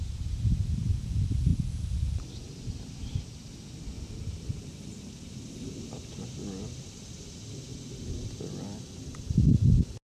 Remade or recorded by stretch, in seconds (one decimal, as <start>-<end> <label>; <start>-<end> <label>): 0.0-10.1 recorded